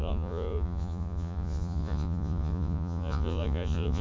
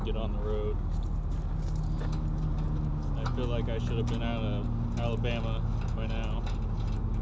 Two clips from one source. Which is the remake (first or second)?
first